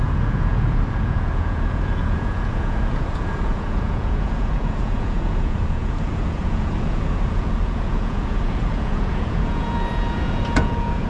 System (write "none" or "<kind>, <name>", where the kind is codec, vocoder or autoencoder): vocoder, Vocos